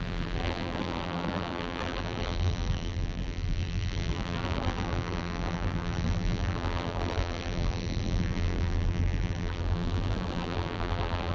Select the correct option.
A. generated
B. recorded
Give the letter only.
A